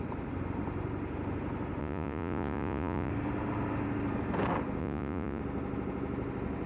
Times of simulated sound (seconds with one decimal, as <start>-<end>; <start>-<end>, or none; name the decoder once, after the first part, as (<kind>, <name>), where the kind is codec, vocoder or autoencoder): 1.8-3.1 (vocoder, Vocos); 4.8-5.4